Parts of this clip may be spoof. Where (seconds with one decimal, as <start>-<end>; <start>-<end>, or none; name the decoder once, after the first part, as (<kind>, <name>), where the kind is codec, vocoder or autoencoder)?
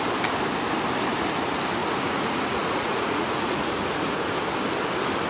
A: 1.8-4.2 (vocoder, Vocos)